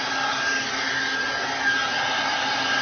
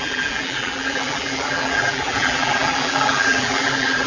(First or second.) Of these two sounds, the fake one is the second